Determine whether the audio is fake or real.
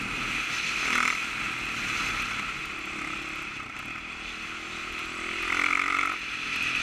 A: real